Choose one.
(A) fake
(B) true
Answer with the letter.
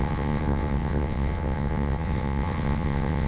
A